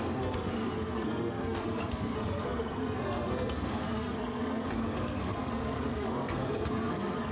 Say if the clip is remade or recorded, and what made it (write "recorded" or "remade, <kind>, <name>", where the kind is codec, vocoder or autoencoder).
remade, codec, SNAC